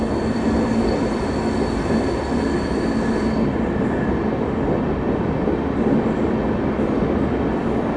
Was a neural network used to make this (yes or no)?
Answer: no